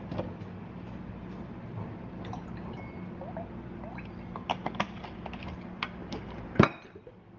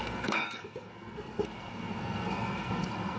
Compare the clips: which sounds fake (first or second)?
second